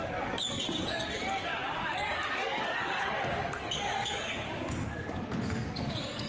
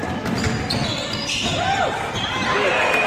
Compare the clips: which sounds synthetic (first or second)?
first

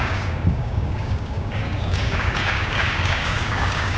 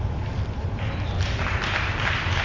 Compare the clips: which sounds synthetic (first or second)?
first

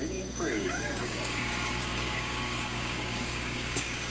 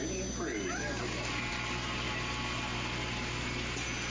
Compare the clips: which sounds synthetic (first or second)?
first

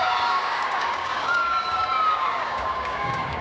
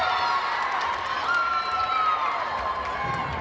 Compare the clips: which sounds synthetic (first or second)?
first